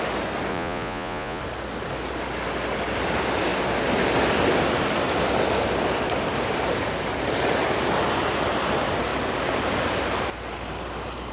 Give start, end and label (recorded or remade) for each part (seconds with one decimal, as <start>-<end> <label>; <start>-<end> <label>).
0.0-0.5 recorded; 0.5-1.4 remade; 1.4-11.3 recorded